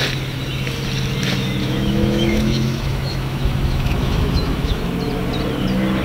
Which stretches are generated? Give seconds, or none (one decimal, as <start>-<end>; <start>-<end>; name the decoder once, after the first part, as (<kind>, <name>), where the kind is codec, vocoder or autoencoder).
1.6-4.8 (autoencoder, DAC-VAE)